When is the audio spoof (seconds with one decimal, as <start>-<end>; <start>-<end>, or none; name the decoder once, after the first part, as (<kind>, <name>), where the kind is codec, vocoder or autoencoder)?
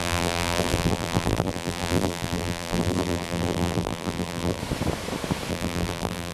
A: 0.0-4.6 (vocoder, BigVGAN v2); 5.5-6.3